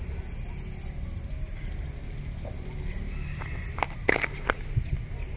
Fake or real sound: real